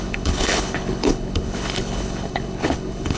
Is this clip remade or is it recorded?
remade